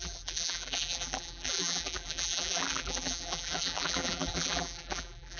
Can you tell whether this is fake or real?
fake